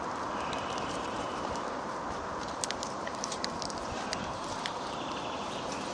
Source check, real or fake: fake